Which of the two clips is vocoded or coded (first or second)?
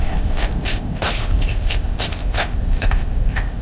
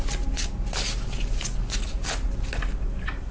first